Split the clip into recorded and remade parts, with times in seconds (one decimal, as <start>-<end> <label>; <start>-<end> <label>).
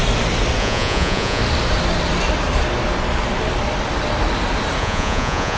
0.0-0.6 recorded; 0.6-1.4 remade; 1.4-4.8 recorded; 4.8-5.6 remade